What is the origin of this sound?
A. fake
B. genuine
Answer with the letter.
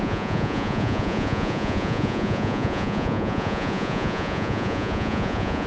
A